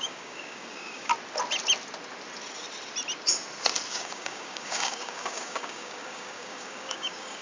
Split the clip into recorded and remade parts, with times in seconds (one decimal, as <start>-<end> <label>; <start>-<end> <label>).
0.0-1.1 remade; 1.1-3.9 recorded; 3.9-7.4 remade